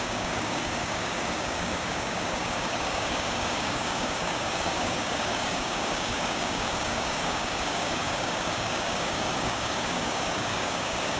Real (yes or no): no